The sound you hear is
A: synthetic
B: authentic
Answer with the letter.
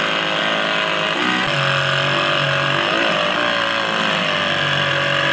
B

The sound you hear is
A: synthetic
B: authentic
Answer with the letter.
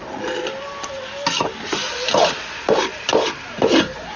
B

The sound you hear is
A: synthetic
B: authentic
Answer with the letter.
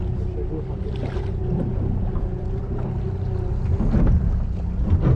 B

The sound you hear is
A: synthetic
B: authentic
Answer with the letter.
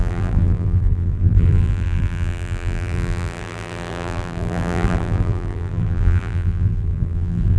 A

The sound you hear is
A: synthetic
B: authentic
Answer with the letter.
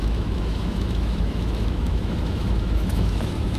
A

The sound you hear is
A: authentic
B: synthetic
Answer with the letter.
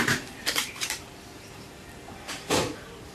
B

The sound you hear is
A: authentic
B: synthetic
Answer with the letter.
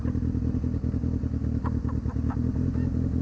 A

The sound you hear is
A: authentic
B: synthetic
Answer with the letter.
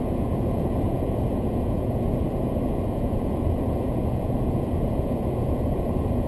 B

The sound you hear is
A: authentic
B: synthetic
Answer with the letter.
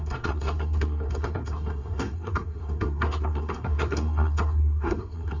B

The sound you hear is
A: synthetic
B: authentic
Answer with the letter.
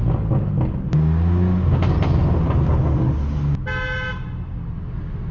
B